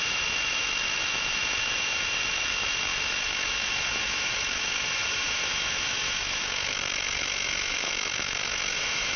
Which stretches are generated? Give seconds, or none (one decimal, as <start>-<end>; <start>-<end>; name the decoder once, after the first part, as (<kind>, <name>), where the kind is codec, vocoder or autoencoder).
0.0-9.2 (autoencoder, DAC-VAE)